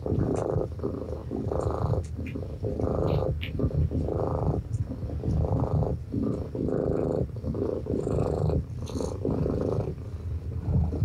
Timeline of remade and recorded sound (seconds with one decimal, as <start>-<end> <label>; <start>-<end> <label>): 0.0-11.0 recorded